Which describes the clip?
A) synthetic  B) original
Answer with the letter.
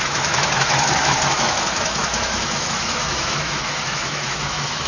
A